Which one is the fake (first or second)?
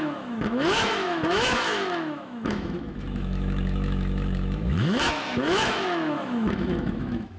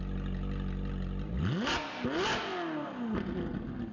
first